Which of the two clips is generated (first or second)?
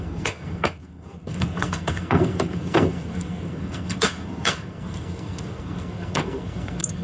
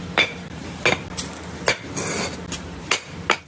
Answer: first